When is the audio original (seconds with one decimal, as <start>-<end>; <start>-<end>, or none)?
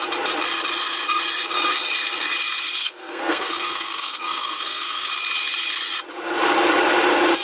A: 0.0-2.8; 5.1-7.4